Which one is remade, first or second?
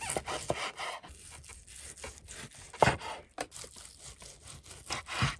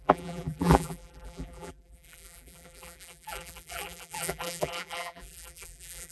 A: second